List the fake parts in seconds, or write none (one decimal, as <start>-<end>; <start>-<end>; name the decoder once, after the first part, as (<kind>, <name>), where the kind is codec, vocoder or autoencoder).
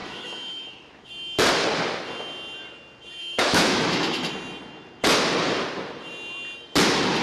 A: 0.0-1.1 (autoencoder, DAC-VAE); 3.2-4.3